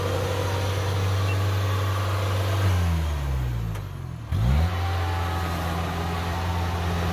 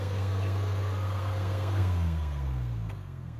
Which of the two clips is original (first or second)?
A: first